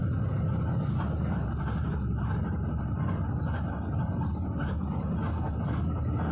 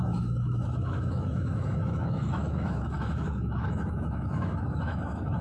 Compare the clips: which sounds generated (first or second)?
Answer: second